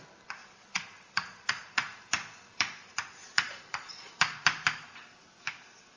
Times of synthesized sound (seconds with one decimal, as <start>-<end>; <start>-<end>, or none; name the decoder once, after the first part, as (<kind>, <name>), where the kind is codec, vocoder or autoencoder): 0.4-2.0 (vocoder, Vocos); 3.2-4.2